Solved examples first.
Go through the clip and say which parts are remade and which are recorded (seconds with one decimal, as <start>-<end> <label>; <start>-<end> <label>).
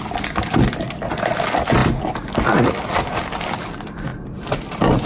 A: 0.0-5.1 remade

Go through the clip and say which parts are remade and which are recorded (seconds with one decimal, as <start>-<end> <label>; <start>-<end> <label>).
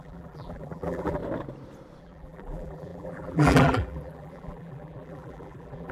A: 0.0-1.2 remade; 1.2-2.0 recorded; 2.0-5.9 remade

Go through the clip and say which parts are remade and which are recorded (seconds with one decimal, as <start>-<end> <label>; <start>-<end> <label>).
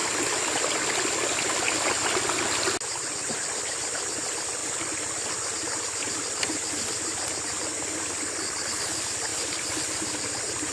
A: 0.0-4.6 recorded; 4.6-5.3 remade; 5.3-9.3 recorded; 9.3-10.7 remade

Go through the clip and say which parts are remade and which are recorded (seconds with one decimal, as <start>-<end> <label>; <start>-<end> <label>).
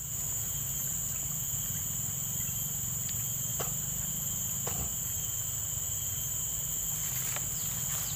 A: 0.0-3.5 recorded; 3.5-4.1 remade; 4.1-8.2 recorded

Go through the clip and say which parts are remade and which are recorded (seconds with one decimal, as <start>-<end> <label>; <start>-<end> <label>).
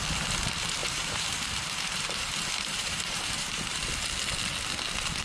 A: 0.0-0.8 recorded; 0.8-3.9 remade; 3.9-5.2 recorded